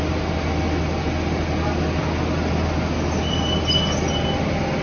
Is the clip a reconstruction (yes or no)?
no